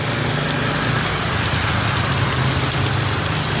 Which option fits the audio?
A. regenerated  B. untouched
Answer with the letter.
B